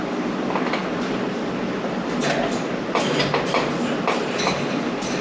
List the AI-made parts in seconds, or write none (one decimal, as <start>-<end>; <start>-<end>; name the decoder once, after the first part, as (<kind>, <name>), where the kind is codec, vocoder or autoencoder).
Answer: none